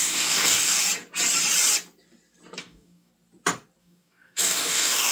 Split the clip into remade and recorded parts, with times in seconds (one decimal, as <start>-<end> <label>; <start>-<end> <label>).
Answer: 0.0-0.8 remade; 0.8-2.6 recorded; 2.6-3.1 remade; 3.1-3.8 recorded; 3.8-5.1 remade